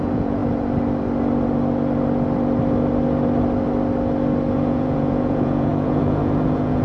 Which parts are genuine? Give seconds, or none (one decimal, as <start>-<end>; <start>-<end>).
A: 0.4-4.5